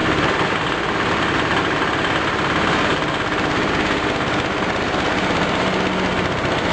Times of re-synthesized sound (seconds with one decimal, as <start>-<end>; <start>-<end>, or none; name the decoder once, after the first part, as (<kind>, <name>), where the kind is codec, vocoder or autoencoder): none